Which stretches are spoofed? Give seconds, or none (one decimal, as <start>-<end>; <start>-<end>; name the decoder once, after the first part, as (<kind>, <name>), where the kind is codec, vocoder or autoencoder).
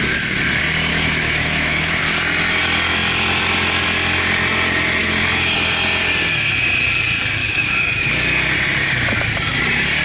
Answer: 0.9-2.0 (autoencoder, DAC-VAE); 7.4-8.1